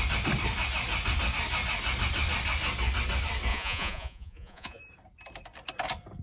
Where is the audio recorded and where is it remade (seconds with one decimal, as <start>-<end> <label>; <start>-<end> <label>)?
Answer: 0.0-3.5 recorded; 3.5-4.8 remade; 4.8-6.2 recorded